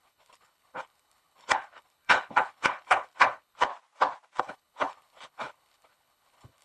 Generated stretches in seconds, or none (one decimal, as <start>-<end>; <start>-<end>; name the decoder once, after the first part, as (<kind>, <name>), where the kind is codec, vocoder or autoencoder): 0.0-3.7 (codec, HILCodec); 4.4-6.6